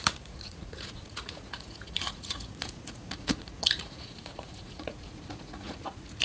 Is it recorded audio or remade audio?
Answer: remade